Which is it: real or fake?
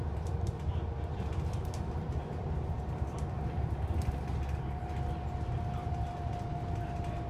real